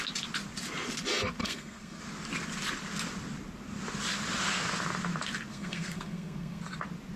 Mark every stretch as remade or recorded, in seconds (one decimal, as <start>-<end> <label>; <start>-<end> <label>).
0.0-1.4 recorded; 1.4-2.0 remade; 2.0-5.5 recorded; 5.5-6.6 remade; 6.6-7.2 recorded